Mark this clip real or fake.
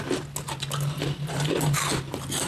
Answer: real